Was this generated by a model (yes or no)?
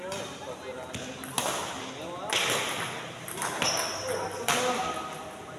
no